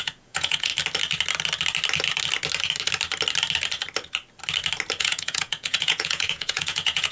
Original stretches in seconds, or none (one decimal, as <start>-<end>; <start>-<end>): 0.7-5.0